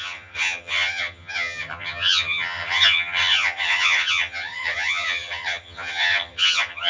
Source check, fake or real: fake